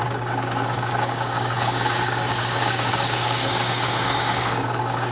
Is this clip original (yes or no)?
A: no